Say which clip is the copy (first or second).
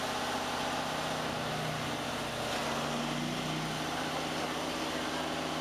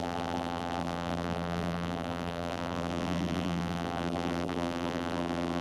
second